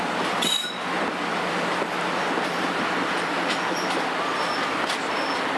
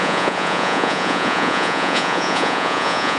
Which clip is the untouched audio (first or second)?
first